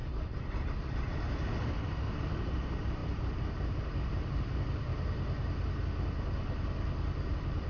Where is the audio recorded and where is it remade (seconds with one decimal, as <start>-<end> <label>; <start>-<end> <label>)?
0.0-1.1 remade; 1.1-2.1 recorded; 2.1-4.9 remade; 4.9-7.3 recorded; 7.3-7.7 remade